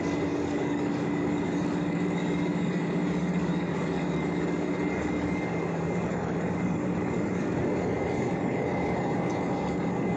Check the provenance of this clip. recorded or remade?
remade